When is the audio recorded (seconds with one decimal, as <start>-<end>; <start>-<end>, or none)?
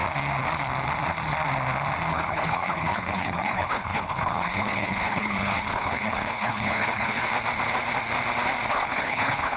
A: 0.0-2.1; 7.3-8.7